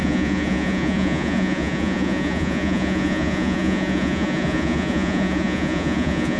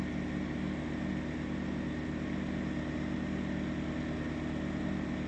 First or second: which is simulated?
first